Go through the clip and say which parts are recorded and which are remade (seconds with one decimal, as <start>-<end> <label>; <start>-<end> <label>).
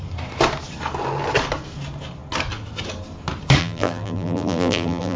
0.0-3.6 recorded; 3.6-5.2 remade